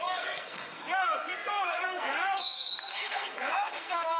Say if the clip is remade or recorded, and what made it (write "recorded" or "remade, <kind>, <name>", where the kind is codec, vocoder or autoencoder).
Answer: remade, codec, SNAC